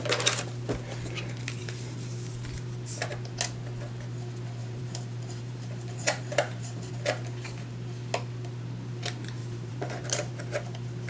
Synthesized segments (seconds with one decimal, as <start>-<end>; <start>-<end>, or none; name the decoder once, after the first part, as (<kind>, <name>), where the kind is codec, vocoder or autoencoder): 1.6-3.1 (vocoder, BigVGAN v2); 4.6-6.9; 9.4-10.3